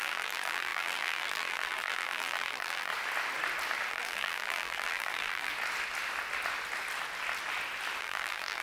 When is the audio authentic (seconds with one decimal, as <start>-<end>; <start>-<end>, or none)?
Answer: 2.9-3.9; 5.5-8.0